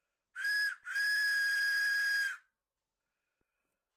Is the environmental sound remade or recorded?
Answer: recorded